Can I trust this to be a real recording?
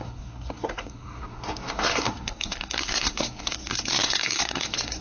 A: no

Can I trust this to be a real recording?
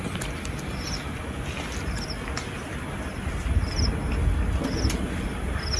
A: yes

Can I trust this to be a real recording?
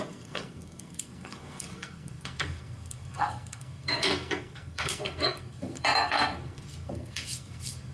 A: no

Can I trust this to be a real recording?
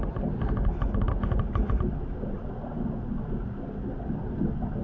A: yes